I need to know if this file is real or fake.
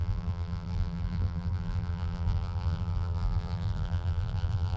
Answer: fake